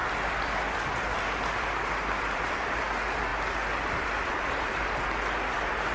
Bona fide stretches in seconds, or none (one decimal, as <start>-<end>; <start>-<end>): 2.8-3.3; 5.0-5.9